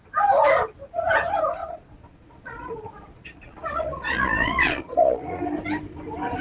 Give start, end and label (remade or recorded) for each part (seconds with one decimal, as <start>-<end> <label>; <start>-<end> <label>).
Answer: 0.0-1.6 recorded; 1.6-5.4 remade; 5.4-6.4 recorded